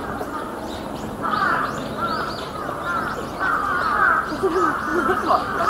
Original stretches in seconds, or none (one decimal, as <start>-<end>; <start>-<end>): 1.4-2.1; 3.6-4.9